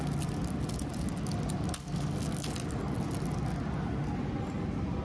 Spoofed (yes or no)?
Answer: no